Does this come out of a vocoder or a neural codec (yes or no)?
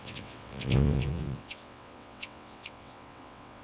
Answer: yes